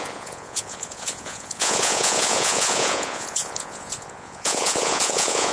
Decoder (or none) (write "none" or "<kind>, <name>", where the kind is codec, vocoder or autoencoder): vocoder, Vocos